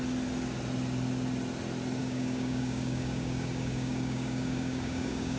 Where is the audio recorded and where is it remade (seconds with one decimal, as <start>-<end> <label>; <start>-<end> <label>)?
0.0-2.0 recorded; 2.0-5.4 remade